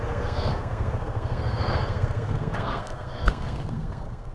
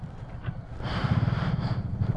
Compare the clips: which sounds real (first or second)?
second